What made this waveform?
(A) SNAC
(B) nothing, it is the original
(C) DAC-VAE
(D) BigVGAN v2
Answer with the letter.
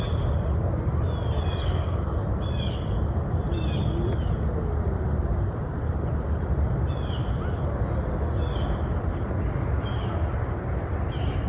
B